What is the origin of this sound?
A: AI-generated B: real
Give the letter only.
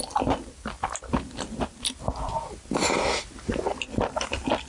B